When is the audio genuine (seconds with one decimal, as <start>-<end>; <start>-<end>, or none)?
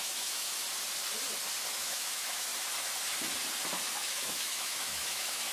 0.6-1.7; 2.5-3.9